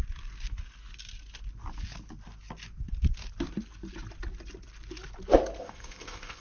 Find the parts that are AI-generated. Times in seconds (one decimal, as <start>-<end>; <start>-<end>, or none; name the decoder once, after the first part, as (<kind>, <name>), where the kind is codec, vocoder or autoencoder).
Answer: 5.6-6.4 (codec, ZipCodec)